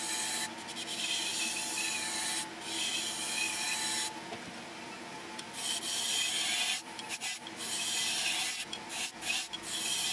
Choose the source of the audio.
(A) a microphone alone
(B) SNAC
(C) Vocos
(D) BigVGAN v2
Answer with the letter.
A